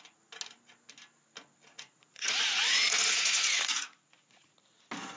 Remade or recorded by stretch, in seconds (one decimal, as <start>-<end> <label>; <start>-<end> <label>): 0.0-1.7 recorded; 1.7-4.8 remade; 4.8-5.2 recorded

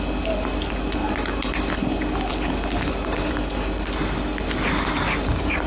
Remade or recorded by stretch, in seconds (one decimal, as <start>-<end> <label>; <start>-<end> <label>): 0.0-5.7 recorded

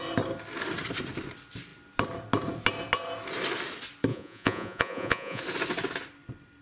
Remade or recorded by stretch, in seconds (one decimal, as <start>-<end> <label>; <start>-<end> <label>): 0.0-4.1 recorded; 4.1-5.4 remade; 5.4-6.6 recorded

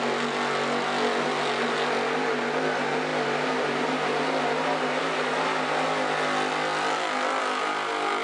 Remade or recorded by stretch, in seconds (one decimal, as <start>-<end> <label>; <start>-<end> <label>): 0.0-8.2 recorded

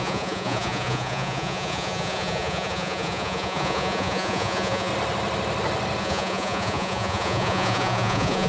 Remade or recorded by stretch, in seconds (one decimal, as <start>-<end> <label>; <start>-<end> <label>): 0.0-4.9 remade; 4.9-6.0 recorded; 6.0-8.5 remade

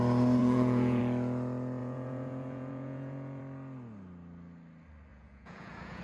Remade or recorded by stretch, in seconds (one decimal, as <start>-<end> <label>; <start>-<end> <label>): 0.0-0.4 recorded; 0.4-1.0 remade; 1.0-1.8 recorded; 1.8-3.4 remade; 3.4-5.1 recorded; 5.1-6.0 remade

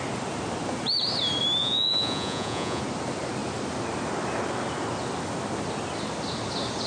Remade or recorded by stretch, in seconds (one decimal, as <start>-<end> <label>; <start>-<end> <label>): 0.0-1.6 recorded; 1.6-2.8 remade; 2.8-6.9 recorded

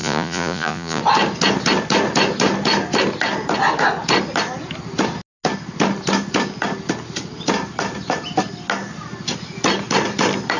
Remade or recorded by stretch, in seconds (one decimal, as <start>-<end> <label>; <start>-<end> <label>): 0.0-1.0 remade; 1.0-10.6 recorded